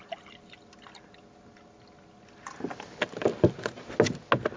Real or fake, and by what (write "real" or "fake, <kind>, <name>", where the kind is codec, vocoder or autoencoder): real